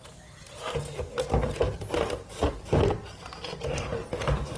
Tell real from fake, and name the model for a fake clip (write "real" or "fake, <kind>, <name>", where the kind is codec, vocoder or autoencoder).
real